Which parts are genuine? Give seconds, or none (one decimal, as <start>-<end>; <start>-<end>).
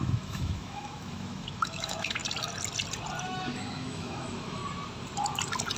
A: 2.2-3.2; 4.6-5.8